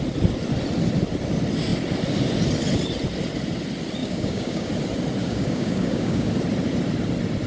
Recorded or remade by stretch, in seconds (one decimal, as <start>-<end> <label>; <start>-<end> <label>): 0.0-4.0 recorded; 4.0-4.7 remade; 4.7-5.2 recorded; 5.2-6.3 remade; 6.3-7.5 recorded